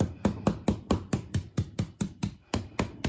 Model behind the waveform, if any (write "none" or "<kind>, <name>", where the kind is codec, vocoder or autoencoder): vocoder, BigVGAN v2